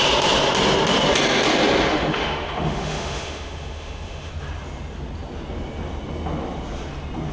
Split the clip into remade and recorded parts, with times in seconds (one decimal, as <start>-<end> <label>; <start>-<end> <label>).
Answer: 0.0-1.9 recorded; 1.9-4.3 remade; 4.3-7.3 recorded